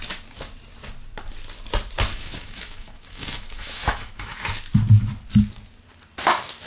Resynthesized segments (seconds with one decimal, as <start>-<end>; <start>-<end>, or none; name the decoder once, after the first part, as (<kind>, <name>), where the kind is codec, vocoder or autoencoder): 2.1-4.5 (autoencoder, DAC-VAE)